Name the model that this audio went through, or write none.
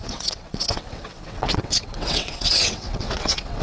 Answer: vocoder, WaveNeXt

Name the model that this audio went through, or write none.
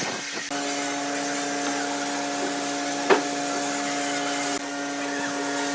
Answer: none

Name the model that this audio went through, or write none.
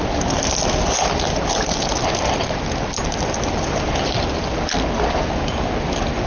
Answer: none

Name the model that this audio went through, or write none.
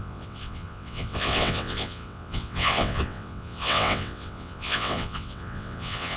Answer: vocoder, WaveNeXt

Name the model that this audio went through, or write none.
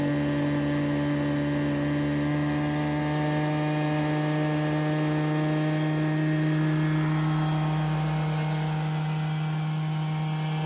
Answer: none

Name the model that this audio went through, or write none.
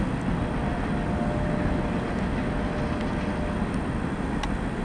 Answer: none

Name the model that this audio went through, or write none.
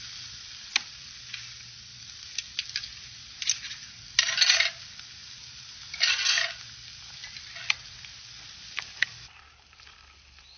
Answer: none